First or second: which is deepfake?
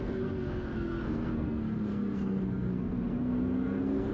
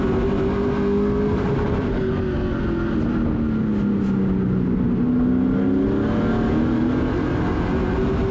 first